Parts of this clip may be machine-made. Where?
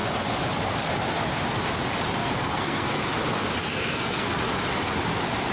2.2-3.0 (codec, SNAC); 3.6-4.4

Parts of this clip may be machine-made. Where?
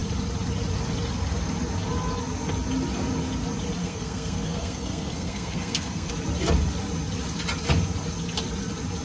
3.8-6.1 (codec, SNAC)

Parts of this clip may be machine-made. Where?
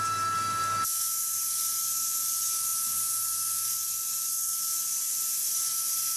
none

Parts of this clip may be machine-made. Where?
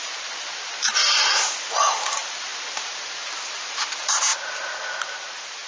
none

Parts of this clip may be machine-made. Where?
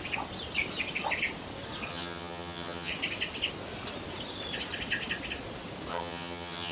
1.9-2.9 (vocoder, HiFi-GAN); 5.9-6.7